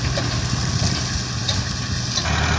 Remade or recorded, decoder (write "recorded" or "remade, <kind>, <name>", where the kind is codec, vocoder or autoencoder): recorded